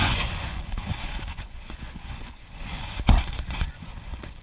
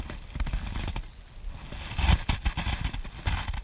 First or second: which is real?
second